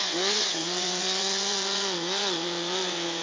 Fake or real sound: fake